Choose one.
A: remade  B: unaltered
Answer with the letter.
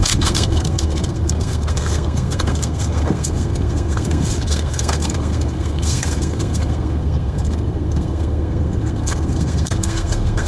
A